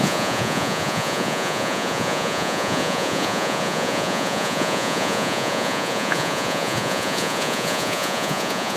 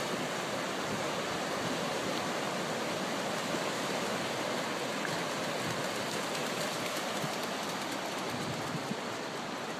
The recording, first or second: second